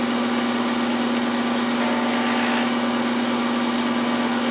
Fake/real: real